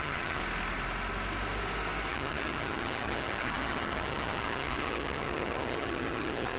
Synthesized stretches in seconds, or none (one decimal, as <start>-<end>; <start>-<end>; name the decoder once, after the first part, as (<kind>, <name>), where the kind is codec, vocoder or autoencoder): 0.0-0.4 (vocoder, HiFi-GAN); 2.1-6.6